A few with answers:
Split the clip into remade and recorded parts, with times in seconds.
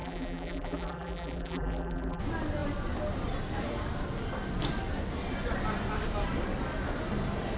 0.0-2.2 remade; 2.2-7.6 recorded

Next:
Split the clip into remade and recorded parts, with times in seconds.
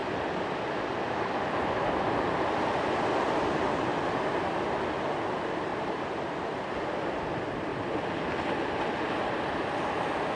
0.0-7.7 recorded; 7.7-8.5 remade; 8.5-10.4 recorded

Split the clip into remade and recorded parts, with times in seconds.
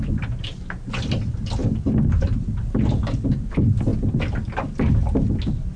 0.0-5.8 recorded